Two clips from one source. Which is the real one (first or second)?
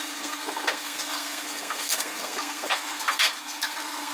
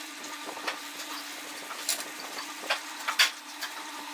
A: second